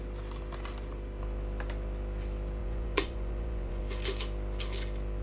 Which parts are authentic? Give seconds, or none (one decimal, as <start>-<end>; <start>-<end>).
0.0-2.6; 3.8-5.2